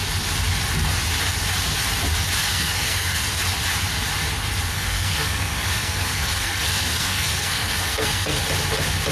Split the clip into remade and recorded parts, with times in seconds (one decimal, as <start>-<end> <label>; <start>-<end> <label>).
0.0-2.4 recorded; 2.4-3.4 remade; 3.4-4.7 recorded; 4.7-8.4 remade; 8.4-9.1 recorded